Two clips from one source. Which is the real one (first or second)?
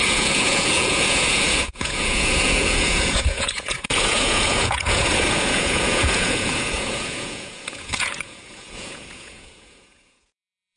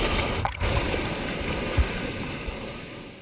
second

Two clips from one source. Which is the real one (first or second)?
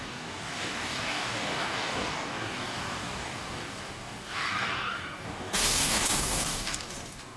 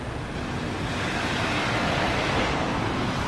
second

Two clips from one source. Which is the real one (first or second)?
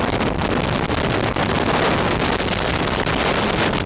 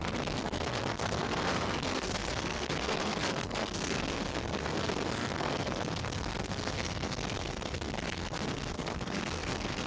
first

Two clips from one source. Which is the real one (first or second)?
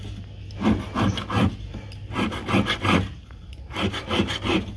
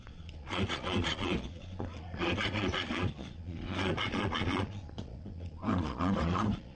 first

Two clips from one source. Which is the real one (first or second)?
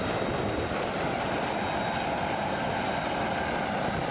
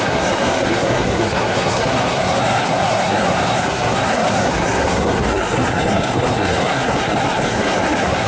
first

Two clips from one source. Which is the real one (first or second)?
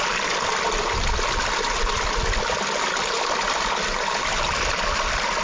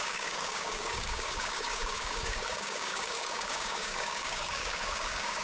first